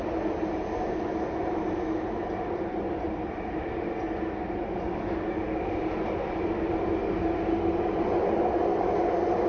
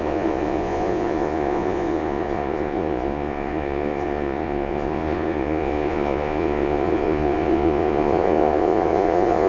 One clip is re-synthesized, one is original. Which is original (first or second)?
first